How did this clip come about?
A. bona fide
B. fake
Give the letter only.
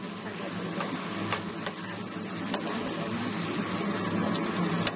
A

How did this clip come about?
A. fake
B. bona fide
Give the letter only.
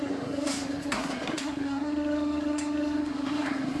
A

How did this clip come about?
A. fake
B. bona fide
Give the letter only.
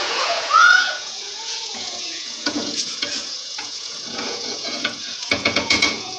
A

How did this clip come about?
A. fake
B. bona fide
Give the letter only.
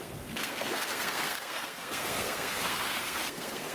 A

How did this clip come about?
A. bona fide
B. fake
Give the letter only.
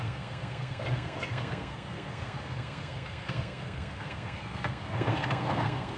B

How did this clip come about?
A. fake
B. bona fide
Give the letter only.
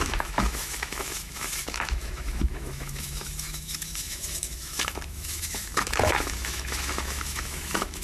A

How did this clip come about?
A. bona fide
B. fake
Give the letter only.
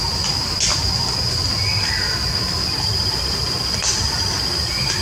A